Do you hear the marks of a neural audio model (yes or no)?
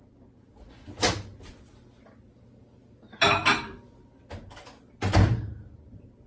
no